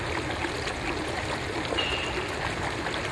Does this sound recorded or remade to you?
recorded